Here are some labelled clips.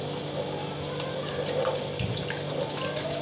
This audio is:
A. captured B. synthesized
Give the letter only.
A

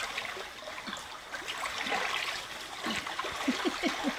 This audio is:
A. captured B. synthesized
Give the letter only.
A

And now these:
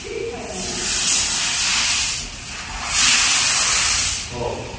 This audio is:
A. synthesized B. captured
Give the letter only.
B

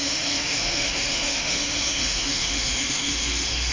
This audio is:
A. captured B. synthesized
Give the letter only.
B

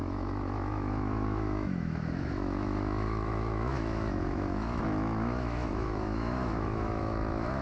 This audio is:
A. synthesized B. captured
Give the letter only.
A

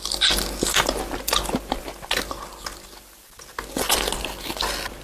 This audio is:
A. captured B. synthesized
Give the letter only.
A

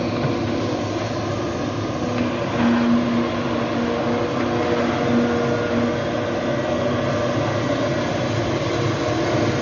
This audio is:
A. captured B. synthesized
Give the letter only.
A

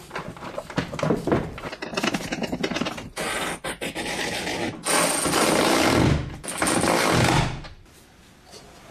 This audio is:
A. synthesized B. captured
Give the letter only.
B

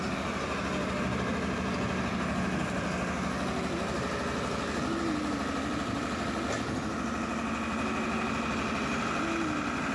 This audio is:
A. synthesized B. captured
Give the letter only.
B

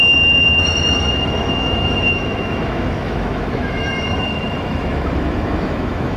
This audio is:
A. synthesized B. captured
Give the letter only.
A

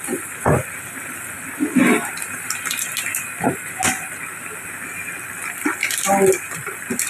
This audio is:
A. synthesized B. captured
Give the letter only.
B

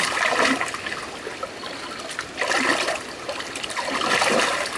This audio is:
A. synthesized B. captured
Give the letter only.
B